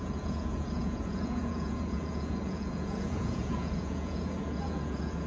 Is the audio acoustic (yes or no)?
no